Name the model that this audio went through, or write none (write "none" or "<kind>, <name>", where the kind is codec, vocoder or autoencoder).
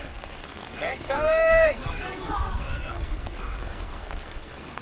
codec, SNAC